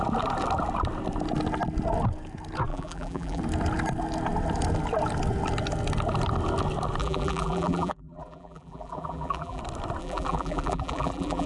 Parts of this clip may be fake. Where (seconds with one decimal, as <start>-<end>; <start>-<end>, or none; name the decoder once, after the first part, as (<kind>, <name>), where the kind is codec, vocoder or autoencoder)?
2.7-3.4 (vocoder, BigVGAN v2); 7.0-9.6; 10.0-11.5